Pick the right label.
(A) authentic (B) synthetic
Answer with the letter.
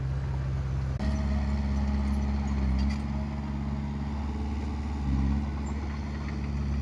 A